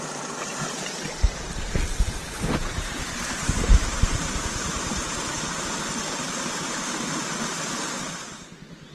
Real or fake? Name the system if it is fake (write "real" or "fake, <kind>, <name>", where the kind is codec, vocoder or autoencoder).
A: fake, vocoder, BigVGAN v2